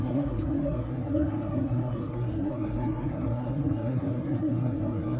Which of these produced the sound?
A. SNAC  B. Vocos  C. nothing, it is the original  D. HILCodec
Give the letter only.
A